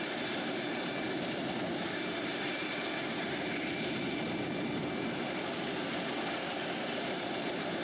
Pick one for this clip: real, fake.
fake